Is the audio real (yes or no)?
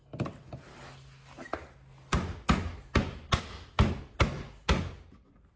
yes